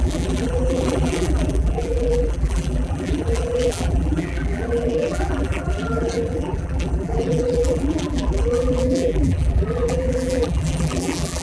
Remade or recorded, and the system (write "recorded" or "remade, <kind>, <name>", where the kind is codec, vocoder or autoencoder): remade, vocoder, BigVGAN v2